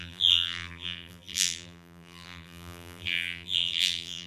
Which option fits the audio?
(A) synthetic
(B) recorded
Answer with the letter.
A